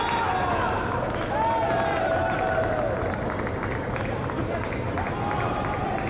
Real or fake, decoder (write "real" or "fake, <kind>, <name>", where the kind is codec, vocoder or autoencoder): real